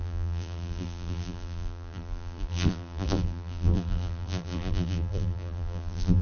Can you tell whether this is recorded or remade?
remade